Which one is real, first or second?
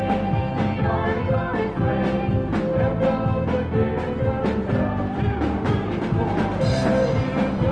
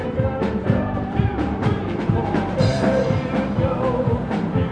first